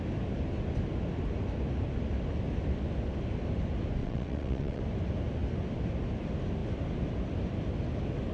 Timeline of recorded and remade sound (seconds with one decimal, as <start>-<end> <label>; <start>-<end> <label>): 0.0-4.0 recorded; 4.0-4.8 remade; 4.8-8.3 recorded